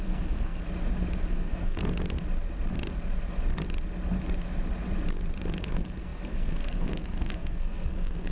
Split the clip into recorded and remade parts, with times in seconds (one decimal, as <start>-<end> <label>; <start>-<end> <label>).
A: 0.0-0.6 remade; 0.6-1.3 recorded; 1.3-1.8 remade; 1.8-5.6 recorded; 5.6-8.3 remade